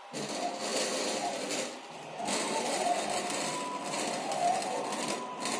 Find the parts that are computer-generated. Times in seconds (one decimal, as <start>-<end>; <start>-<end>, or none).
none